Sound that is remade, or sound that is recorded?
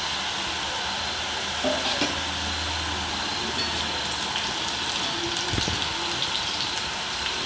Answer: recorded